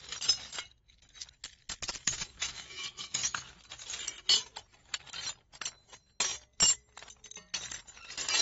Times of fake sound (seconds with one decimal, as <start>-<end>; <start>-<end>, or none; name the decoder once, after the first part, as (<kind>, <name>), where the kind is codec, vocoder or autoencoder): 2.0-3.6 (autoencoder, DAC-VAE)